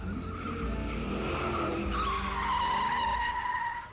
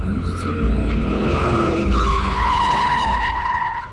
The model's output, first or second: second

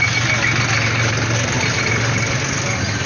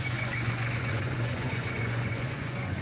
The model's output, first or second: second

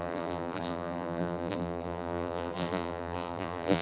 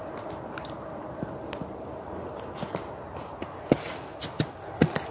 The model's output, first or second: first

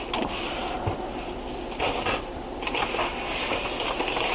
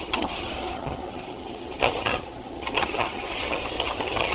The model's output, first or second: second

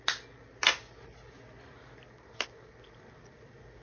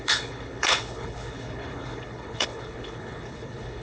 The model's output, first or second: second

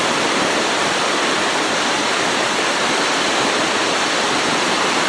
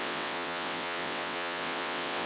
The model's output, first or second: second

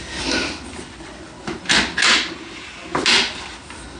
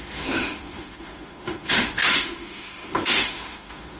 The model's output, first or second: second